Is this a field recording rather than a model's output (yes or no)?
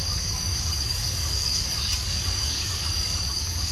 no